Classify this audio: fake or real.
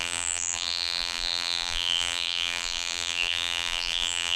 fake